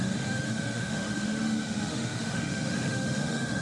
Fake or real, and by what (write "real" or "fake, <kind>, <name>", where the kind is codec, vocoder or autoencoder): fake, autoencoder, DAC-VAE